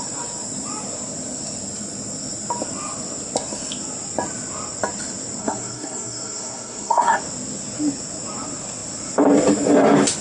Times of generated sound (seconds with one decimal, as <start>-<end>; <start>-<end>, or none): 5.4-7.2